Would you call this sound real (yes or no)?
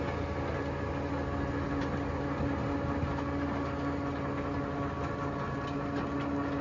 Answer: yes